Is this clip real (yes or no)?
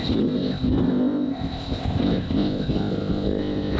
no